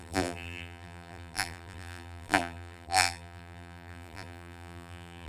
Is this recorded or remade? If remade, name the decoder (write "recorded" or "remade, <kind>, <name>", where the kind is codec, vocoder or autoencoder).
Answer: remade, vocoder, BigVGAN v2